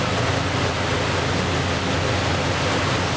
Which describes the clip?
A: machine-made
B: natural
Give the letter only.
B